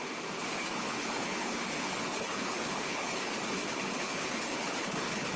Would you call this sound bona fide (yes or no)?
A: no